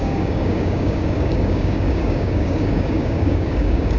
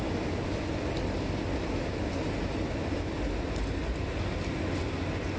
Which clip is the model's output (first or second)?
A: first